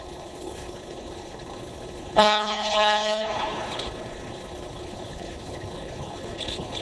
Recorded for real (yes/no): no